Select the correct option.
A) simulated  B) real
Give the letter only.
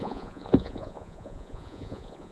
A